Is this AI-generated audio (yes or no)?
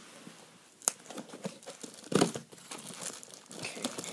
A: no